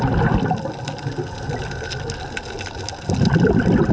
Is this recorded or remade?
recorded